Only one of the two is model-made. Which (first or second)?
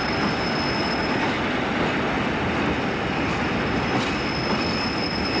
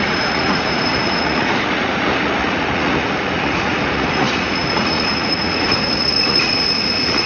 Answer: second